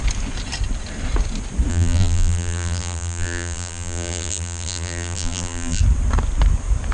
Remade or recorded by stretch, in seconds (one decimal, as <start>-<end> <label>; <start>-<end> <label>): 0.0-1.7 recorded; 1.7-5.8 remade; 5.8-6.9 recorded